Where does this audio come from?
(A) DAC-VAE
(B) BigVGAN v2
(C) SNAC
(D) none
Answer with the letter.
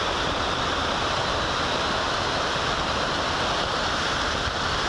D